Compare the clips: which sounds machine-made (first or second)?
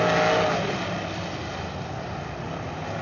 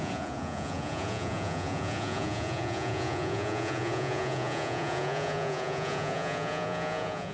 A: second